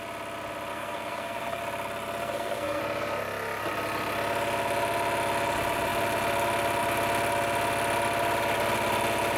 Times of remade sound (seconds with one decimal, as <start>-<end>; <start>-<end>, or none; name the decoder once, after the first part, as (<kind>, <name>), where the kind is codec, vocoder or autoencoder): 0.7-1.6 (codec, SNAC); 2.2-2.8